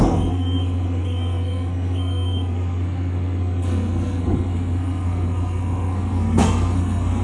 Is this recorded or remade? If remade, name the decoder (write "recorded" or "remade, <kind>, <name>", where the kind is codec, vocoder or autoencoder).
remade, codec, SNAC